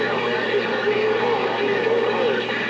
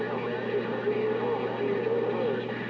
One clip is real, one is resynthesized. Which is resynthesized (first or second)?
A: first